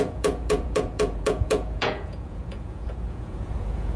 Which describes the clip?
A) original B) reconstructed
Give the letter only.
B